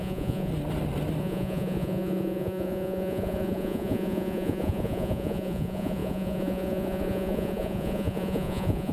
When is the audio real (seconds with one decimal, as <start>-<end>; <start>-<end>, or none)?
0.5-1.2